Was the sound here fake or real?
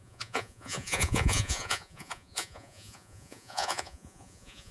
fake